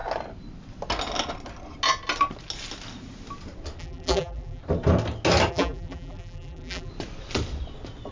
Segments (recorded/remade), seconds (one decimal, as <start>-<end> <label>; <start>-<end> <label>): 0.0-3.8 recorded; 3.8-4.6 remade; 4.6-5.5 recorded; 5.5-6.9 remade; 6.9-8.1 recorded